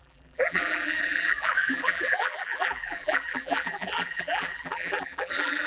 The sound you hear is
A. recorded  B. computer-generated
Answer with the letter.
B